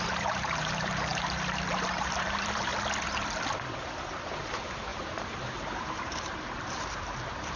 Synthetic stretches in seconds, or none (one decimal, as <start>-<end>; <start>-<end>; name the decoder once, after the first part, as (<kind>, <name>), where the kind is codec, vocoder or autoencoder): 0.0-2.7 (vocoder, BigVGAN v2); 4.2-7.6